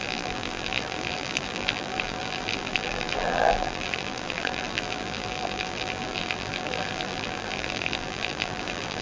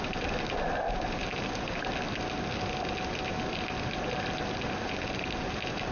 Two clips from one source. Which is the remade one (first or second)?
first